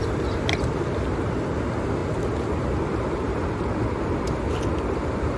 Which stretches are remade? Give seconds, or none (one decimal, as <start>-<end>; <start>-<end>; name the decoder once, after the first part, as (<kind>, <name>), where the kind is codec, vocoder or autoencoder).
0.0-0.7 (vocoder, BigVGAN v2)